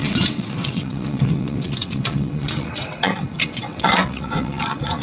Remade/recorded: remade